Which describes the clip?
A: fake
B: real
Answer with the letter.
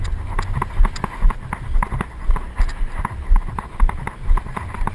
B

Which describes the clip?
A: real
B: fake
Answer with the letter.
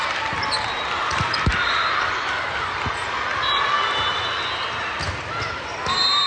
A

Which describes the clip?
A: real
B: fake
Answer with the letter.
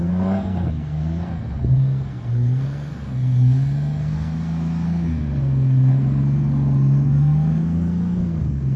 B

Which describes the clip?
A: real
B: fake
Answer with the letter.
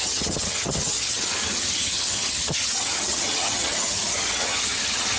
B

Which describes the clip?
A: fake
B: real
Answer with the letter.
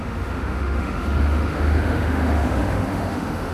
A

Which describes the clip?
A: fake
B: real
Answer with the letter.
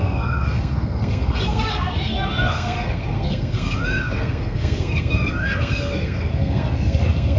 A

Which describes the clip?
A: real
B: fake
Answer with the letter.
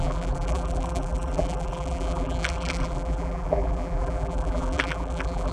B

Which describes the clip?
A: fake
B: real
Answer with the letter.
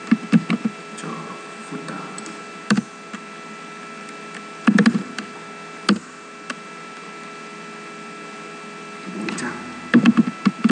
B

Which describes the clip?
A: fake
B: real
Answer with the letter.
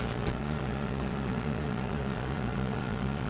A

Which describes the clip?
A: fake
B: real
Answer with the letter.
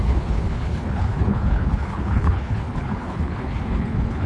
A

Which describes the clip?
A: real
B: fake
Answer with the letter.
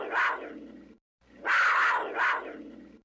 A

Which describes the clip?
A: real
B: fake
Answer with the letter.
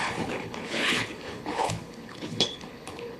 B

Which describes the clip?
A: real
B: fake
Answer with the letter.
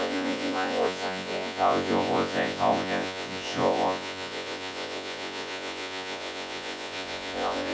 B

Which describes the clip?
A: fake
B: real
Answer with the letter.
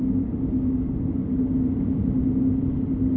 B